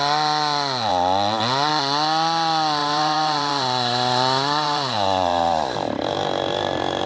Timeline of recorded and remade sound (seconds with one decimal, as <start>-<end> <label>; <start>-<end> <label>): 0.0-2.8 recorded; 2.8-7.1 remade